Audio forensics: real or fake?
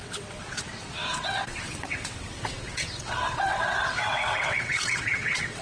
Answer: fake